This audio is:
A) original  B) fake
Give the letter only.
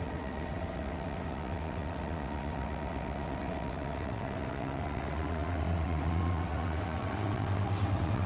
B